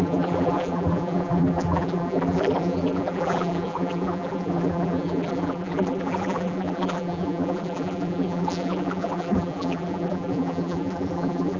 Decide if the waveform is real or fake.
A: fake